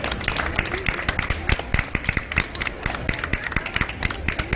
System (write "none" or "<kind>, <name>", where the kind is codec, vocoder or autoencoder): none